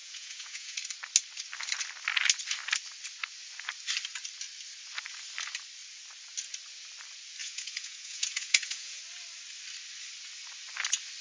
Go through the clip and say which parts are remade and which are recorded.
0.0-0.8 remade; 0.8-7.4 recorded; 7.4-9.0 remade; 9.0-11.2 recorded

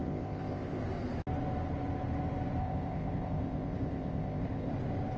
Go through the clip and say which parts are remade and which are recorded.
0.0-0.8 remade; 0.8-2.6 recorded; 2.6-4.7 remade; 4.7-5.2 recorded

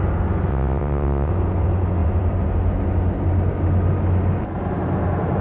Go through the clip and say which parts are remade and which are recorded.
0.0-0.5 recorded; 0.5-1.3 remade; 1.3-5.4 recorded

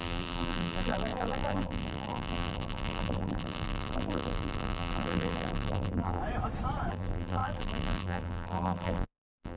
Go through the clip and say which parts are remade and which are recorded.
0.0-6.2 remade; 6.2-6.9 recorded; 6.9-9.6 remade